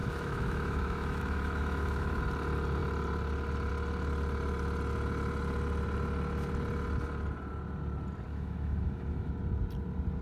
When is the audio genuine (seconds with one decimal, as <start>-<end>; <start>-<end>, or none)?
2.2-8.3; 9.3-10.2